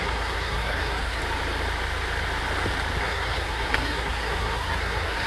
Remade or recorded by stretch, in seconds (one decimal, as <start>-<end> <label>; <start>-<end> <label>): 0.0-1.2 remade; 1.2-3.0 recorded; 3.0-5.3 remade